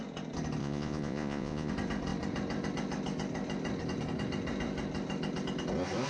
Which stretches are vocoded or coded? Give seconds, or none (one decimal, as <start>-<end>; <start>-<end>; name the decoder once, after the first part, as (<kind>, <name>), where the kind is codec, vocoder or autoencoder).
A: 0.6-1.7 (vocoder, Vocos)